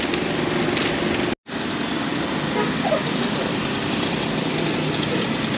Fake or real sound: real